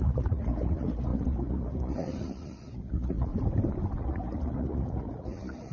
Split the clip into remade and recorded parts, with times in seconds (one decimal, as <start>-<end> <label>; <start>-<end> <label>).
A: 0.0-3.3 remade; 3.3-4.0 recorded; 4.0-5.7 remade